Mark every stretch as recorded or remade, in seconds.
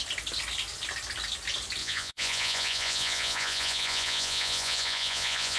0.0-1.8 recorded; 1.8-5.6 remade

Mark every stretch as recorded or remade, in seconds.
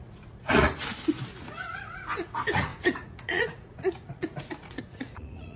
0.0-0.9 remade; 0.9-1.7 recorded; 1.7-5.6 remade